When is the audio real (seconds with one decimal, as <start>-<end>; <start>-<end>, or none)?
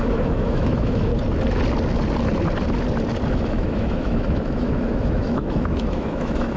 1.1-3.3